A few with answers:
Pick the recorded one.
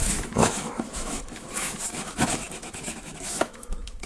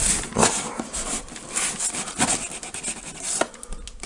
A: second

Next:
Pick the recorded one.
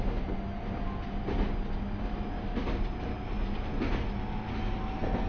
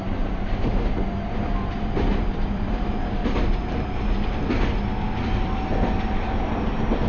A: first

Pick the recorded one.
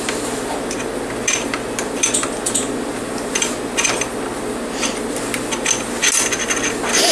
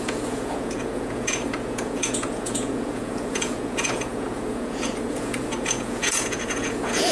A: first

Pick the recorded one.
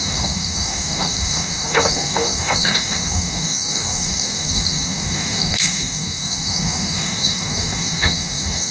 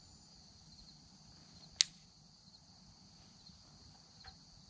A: second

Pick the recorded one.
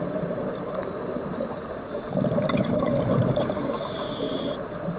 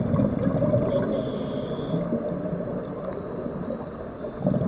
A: second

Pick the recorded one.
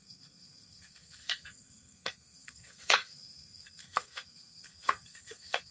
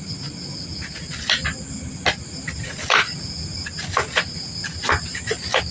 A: second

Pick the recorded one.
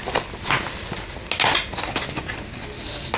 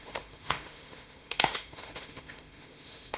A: first